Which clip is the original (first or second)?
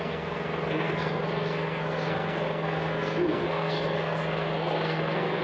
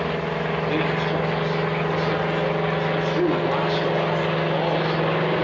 second